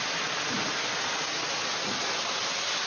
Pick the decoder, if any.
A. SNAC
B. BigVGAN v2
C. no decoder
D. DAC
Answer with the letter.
C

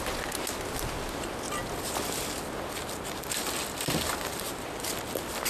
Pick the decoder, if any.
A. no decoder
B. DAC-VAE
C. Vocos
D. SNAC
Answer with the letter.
A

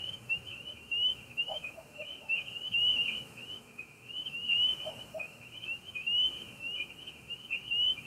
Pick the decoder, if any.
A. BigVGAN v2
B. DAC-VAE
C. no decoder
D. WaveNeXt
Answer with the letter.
B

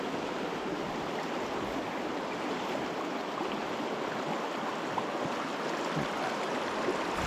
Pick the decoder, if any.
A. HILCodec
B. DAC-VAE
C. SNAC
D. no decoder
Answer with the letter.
D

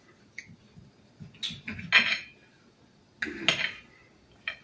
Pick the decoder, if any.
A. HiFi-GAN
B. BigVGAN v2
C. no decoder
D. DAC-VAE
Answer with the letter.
C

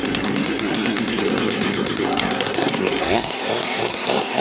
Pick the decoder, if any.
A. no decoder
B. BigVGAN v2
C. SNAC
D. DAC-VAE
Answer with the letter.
C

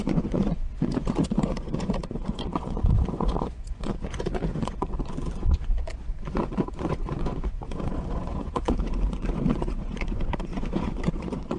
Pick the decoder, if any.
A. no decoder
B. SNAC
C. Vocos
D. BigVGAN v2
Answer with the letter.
C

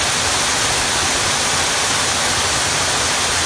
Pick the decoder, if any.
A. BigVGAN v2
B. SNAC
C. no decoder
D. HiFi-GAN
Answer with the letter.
C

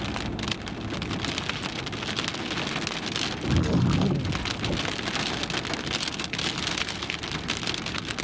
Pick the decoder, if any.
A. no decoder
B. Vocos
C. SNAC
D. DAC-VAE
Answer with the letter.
A